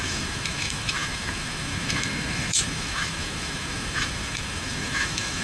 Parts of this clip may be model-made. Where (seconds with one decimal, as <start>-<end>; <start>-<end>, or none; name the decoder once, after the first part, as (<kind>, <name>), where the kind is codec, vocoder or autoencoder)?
0.0-5.4 (autoencoder, DAC-VAE)